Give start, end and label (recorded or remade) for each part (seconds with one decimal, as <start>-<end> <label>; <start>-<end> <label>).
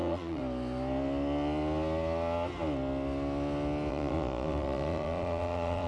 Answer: 0.0-0.4 remade; 0.4-3.9 recorded; 3.9-5.9 remade